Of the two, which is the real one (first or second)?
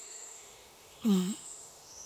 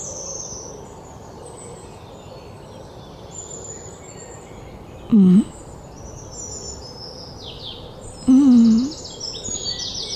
second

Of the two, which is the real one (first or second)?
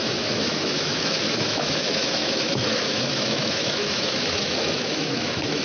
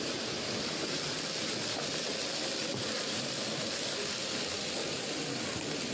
second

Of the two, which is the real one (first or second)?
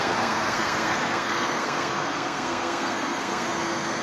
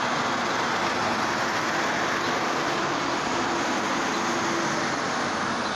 second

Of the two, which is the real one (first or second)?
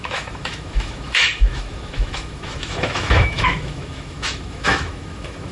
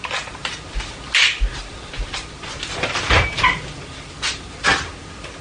second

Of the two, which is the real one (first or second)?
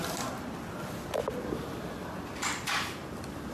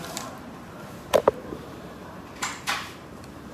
first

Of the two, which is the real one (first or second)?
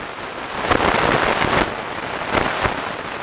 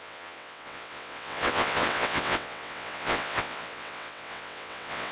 first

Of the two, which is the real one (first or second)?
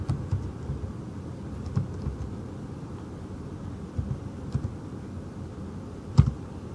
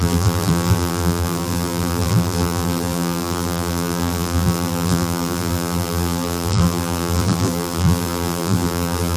first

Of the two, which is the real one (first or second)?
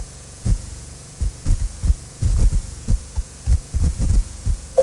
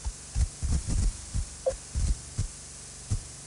second